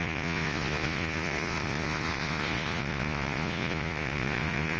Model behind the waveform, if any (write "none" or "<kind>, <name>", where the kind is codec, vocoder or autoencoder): vocoder, Vocos